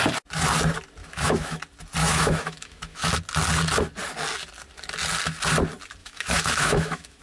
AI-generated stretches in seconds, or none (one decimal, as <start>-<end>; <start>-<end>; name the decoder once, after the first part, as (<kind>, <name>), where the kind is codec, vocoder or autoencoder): 1.0-1.6 (autoencoder, DAC-VAE); 2.0-3.1; 6.0-7.2